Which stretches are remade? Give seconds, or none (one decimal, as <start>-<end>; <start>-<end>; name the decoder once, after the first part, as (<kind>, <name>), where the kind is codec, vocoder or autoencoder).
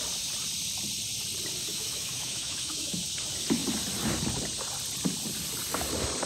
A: 1.7-3.0 (autoencoder, DAC-VAE)